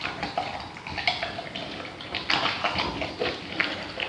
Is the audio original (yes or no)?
no